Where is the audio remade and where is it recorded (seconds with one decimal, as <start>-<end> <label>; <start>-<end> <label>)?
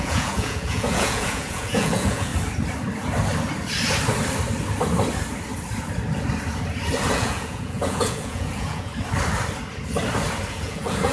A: 0.0-2.3 remade; 2.3-7.1 recorded; 7.1-8.9 remade; 8.9-10.5 recorded; 10.5-11.1 remade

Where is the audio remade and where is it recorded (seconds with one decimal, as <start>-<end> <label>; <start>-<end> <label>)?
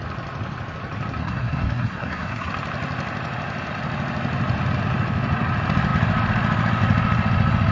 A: 0.0-1.2 recorded; 1.2-2.5 remade; 2.5-7.7 recorded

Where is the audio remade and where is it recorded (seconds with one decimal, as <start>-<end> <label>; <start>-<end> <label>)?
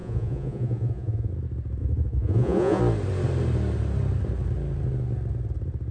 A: 0.0-1.3 remade; 1.3-1.8 recorded; 1.8-2.8 remade; 2.8-5.9 recorded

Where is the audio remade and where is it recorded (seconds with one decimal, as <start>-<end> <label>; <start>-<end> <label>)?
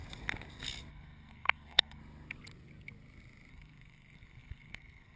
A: 0.0-0.9 recorded; 0.9-2.0 remade; 2.0-3.5 recorded; 3.5-5.2 remade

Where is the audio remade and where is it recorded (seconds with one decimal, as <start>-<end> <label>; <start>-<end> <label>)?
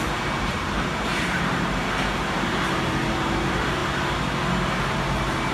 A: 0.0-3.8 remade; 3.8-4.7 recorded; 4.7-5.5 remade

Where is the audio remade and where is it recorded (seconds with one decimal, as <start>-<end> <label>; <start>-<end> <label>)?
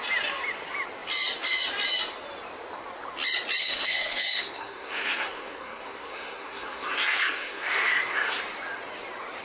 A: 0.0-3.6 recorded; 3.6-8.4 remade; 8.4-9.4 recorded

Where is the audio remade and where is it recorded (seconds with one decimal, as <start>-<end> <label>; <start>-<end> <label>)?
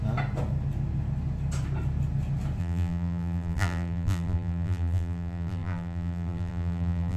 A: 0.0-2.6 recorded; 2.6-7.2 remade